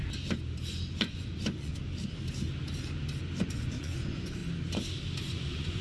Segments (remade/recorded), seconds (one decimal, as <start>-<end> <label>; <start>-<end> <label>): 0.0-0.9 recorded; 0.9-1.8 remade; 1.8-3.4 recorded; 3.4-4.4 remade; 4.4-5.2 recorded; 5.2-5.8 remade